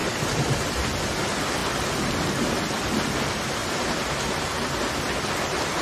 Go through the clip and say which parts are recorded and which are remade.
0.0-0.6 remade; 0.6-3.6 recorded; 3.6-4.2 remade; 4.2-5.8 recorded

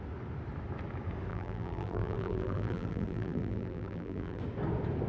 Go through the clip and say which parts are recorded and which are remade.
0.0-1.3 recorded; 1.3-4.4 remade; 4.4-5.1 recorded

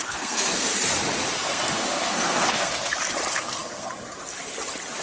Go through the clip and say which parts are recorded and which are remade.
0.0-0.7 remade; 0.7-1.4 recorded; 1.4-2.7 remade; 2.7-3.3 recorded; 3.3-3.9 remade; 3.9-5.0 recorded